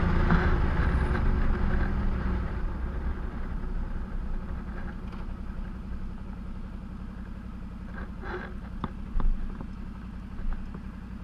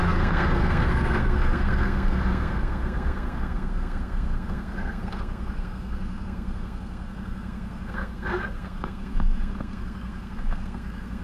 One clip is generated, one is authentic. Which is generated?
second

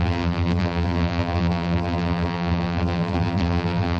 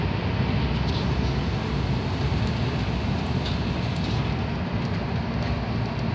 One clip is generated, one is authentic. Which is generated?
first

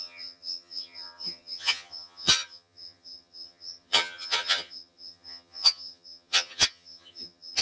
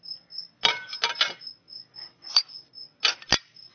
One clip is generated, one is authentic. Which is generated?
first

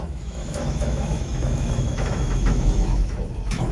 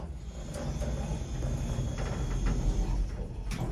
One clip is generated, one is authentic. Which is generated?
first